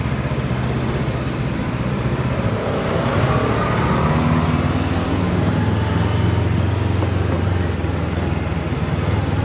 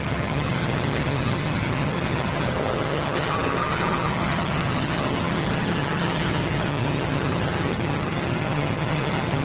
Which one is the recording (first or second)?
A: first